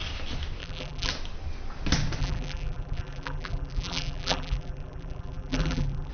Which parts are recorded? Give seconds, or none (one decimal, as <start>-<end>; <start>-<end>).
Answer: 0.0-0.6; 1.1-2.2